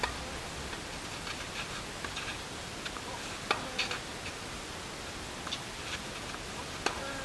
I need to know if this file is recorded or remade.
recorded